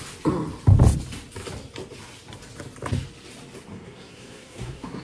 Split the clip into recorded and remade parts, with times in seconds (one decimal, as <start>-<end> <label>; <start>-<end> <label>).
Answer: 0.0-3.7 recorded; 3.7-5.0 remade